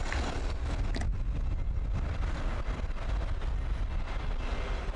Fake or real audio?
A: real